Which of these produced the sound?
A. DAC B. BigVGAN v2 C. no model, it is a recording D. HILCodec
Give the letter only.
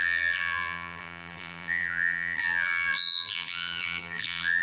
B